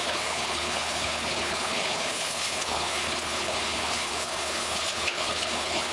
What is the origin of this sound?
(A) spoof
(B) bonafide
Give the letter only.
A